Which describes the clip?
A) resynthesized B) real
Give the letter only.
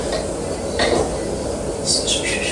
B